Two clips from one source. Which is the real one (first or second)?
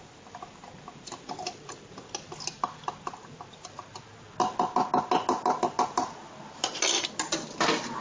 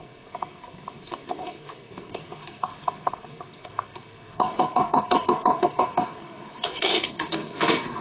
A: first